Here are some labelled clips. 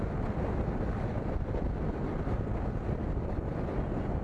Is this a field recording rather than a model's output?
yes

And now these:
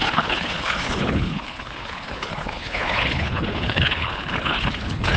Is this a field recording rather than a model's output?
no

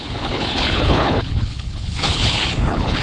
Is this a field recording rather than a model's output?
no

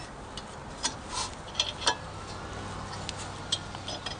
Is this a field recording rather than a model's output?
yes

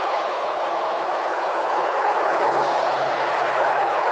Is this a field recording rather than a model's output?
no